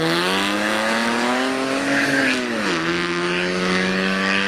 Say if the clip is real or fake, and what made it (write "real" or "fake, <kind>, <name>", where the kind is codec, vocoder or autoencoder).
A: fake, codec, DAC